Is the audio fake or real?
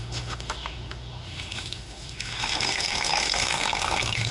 fake